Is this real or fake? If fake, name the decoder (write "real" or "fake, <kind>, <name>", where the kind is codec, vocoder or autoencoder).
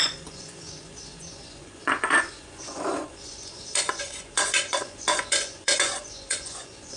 fake, vocoder, Vocos